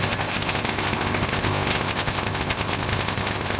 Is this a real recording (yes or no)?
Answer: no